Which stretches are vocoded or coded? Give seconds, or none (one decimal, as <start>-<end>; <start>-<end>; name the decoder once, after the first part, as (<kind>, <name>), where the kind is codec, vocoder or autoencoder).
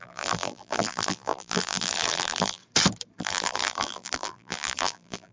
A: 0.0-2.6 (vocoder, BigVGAN v2); 3.2-5.3